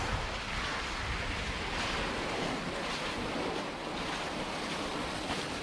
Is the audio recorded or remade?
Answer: recorded